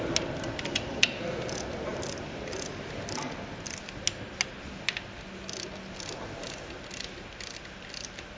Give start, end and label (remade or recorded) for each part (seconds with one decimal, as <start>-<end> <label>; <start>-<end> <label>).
0.0-8.4 recorded